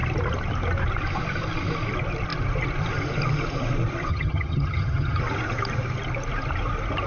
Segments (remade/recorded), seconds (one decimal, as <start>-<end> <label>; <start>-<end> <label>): 0.0-4.1 recorded; 4.1-5.2 remade; 5.2-7.1 recorded